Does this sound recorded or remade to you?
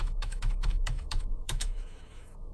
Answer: remade